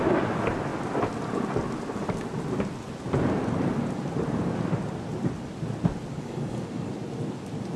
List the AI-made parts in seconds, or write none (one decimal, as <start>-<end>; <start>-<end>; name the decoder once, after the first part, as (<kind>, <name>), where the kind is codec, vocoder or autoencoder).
6.1-6.9 (codec, DAC)